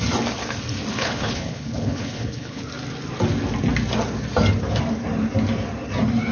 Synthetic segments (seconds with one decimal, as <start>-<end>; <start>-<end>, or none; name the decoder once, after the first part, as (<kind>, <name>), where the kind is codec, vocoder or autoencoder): 0.9-2.6 (codec, HILCodec)